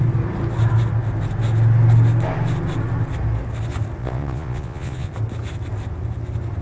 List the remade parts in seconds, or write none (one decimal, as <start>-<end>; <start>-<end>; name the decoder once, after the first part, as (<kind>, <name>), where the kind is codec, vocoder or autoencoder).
4.0-5.1 (vocoder, Vocos)

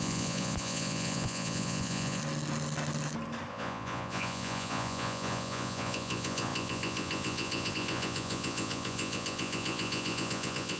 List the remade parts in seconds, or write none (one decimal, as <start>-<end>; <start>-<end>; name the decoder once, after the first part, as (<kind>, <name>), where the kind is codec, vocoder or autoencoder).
0.0-2.2 (vocoder, Vocos); 3.5-10.8

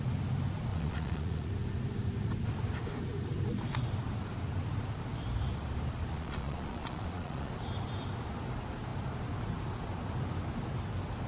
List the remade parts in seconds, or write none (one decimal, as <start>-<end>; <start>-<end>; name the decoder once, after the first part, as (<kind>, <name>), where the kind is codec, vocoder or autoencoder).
0.7-1.5 (vocoder, Vocos); 6.1-7.5

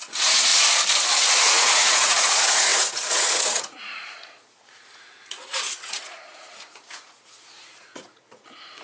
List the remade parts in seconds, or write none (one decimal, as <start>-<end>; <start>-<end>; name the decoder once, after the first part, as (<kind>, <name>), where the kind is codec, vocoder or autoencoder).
0.0-0.5 (vocoder, Vocos); 1.3-8.8

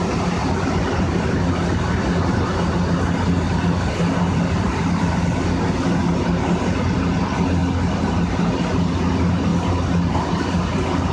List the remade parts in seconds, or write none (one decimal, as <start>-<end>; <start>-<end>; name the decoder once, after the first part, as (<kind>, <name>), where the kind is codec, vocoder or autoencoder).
none